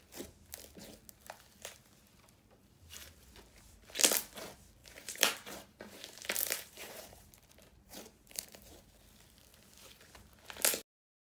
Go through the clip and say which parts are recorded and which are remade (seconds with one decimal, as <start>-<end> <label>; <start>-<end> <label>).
0.0-2.6 recorded; 2.6-3.3 remade; 3.3-4.8 recorded; 4.8-8.8 remade; 8.8-11.3 recorded